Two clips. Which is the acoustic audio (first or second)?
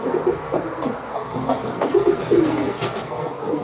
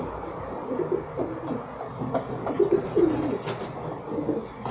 second